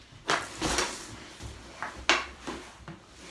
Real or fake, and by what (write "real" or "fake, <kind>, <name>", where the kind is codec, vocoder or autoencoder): real